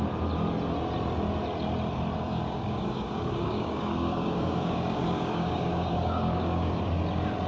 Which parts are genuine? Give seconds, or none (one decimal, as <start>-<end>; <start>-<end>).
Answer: 0.0-2.3; 6.8-7.5